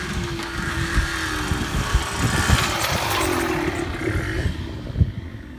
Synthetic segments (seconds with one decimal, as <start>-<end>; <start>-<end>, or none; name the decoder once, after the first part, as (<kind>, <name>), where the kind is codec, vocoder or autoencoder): 0.0-1.1 (codec, DAC); 1.6-2.0; 4.5-5.6